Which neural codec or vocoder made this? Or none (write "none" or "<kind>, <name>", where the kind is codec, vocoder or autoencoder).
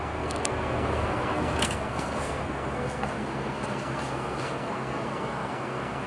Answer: codec, SNAC